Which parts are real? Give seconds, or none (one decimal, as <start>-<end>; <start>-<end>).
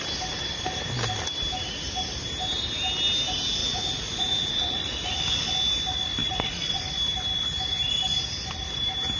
0.0-3.6; 5.5-6.2; 6.8-9.2